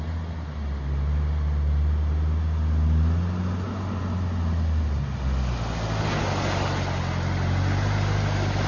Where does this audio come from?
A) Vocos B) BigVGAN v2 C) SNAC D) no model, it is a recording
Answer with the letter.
D